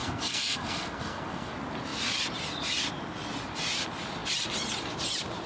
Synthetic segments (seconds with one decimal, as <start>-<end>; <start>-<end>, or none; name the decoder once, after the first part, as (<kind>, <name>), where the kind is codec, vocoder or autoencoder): 0.0-1.5 (codec, SNAC)